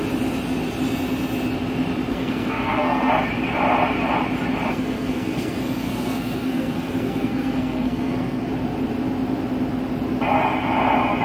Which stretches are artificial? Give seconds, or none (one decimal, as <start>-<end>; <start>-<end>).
2.1-3.1; 4.7-8.5